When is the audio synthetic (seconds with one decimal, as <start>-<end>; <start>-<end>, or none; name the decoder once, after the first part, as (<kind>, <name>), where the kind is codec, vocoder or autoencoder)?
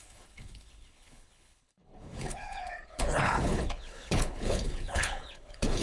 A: 0.0-5.8 (codec, HILCodec)